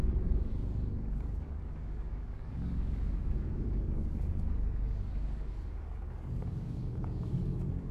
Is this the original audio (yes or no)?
no